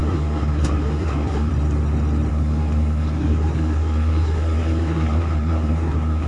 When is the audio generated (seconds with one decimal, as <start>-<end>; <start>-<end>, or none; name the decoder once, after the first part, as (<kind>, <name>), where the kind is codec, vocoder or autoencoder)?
0.0-1.5 (codec, SNAC); 2.3-6.3